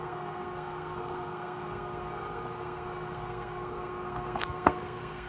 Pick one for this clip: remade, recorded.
remade